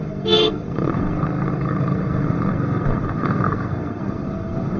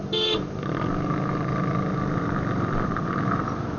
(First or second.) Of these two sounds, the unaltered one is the second